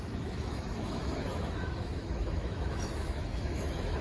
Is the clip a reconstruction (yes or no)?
yes